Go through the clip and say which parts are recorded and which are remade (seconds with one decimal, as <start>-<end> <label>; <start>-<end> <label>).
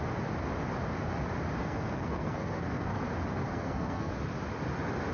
0.0-1.6 recorded; 1.6-3.0 remade; 3.0-3.4 recorded; 3.4-4.1 remade; 4.1-5.1 recorded